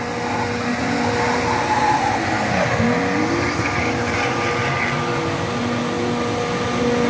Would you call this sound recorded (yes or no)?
yes